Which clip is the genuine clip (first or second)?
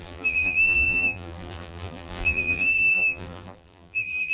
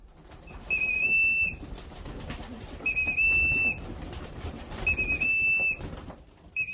second